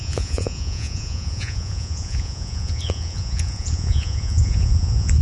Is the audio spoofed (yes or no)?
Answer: yes